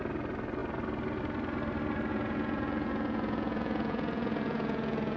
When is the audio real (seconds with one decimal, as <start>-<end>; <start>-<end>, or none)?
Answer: 0.0-2.1